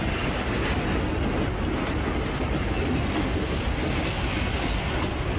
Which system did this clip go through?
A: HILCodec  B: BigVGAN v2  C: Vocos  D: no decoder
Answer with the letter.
D